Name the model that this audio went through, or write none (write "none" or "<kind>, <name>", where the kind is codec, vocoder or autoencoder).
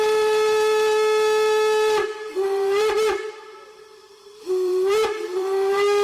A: vocoder, BigVGAN v2